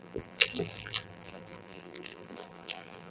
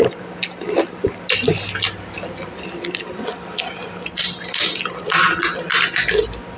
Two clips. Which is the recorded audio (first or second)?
second